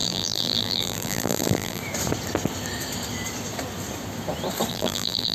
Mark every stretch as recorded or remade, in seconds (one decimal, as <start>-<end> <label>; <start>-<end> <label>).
0.0-1.8 remade; 1.8-4.7 recorded; 4.7-5.3 remade